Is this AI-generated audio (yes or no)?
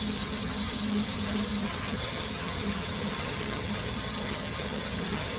yes